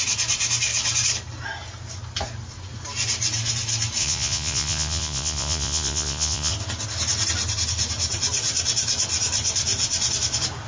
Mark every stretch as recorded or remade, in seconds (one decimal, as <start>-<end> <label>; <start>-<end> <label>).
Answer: 0.0-4.0 recorded; 4.0-6.5 remade; 6.5-10.7 recorded

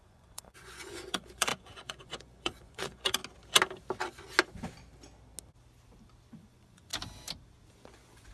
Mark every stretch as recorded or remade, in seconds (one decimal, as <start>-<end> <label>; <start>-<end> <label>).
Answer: 0.0-3.2 remade; 3.2-6.3 recorded; 6.3-6.9 remade; 6.9-7.7 recorded; 7.7-8.3 remade

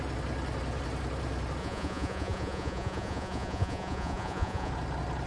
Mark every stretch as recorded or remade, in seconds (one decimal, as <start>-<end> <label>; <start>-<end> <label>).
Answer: 0.0-1.6 recorded; 1.6-4.7 remade; 4.7-5.3 recorded

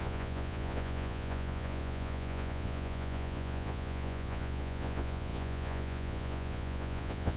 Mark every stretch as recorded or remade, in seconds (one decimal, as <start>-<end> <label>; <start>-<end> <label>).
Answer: 0.0-7.4 remade

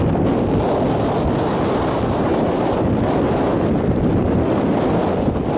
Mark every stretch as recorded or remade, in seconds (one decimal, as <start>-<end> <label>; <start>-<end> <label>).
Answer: 0.0-5.6 recorded

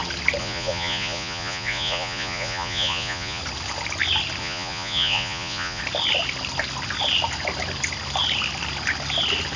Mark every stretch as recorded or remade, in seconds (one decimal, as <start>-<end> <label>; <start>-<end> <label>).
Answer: 0.0-0.4 recorded; 0.4-3.4 remade; 3.4-4.4 recorded; 4.4-5.8 remade; 5.8-9.6 recorded

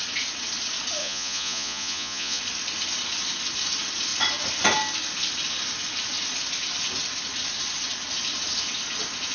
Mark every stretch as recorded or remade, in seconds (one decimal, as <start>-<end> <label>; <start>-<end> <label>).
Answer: 0.0-1.0 recorded; 1.0-2.4 remade; 2.4-9.3 recorded